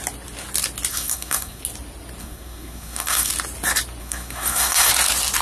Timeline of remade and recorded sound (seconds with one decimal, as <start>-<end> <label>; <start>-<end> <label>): 0.0-0.9 recorded; 0.9-1.6 remade; 1.6-2.2 recorded; 2.2-3.3 remade; 3.3-4.0 recorded; 4.0-4.9 remade; 4.9-5.4 recorded